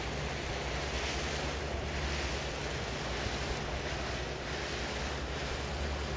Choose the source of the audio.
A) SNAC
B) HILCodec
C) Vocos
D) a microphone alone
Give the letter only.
D